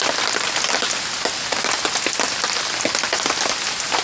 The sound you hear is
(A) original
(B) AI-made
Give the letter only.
A